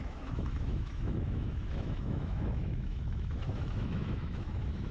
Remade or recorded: remade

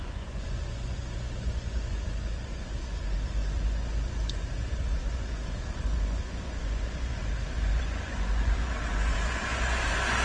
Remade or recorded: remade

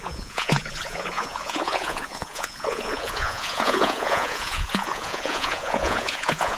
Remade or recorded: remade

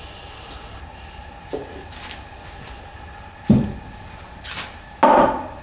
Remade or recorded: recorded